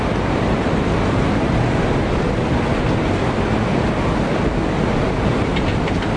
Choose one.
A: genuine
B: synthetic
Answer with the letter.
A